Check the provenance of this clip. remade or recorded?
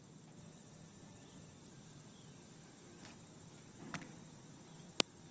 recorded